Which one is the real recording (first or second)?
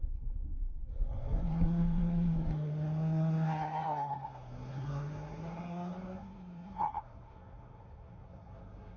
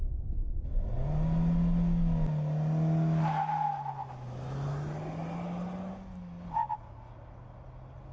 second